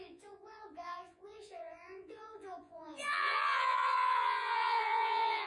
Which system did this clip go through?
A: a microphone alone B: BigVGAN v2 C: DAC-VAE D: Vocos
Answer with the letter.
D